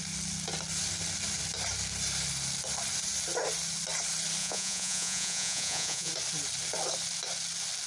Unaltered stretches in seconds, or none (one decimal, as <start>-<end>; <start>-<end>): 0.0-4.4; 6.1-7.9